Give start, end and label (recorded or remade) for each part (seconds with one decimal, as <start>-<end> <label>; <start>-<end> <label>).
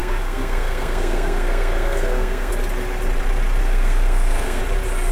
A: 0.0-2.5 remade; 2.5-3.6 recorded; 3.6-4.6 remade; 4.6-5.1 recorded